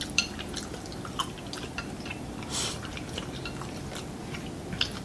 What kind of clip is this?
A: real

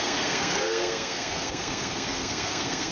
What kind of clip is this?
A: fake